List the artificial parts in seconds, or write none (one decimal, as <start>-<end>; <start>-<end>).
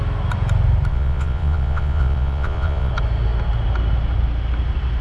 0.9-2.9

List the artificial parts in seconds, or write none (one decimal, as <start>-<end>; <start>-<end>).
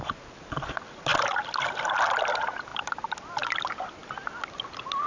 none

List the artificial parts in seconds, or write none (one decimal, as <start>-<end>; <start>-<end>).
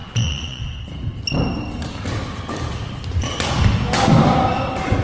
0.0-0.6